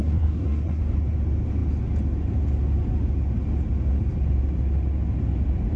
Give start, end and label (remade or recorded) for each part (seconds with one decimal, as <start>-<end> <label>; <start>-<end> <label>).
0.0-0.8 remade; 0.8-5.8 recorded

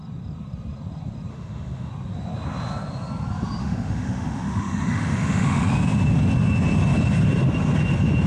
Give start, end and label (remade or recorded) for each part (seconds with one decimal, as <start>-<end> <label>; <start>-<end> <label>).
0.0-1.3 recorded; 1.3-1.9 remade; 1.9-3.6 recorded; 3.6-5.7 remade; 5.7-8.3 recorded

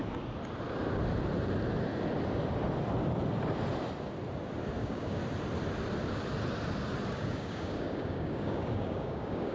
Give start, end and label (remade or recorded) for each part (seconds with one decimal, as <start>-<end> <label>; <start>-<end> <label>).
0.0-4.8 recorded; 4.8-5.2 remade; 5.2-7.1 recorded; 7.1-9.5 remade